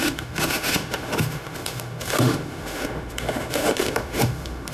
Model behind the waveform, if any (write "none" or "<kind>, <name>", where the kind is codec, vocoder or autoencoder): autoencoder, DAC-VAE